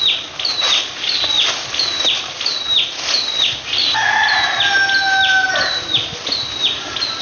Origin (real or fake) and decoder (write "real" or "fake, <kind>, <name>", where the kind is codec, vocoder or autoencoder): real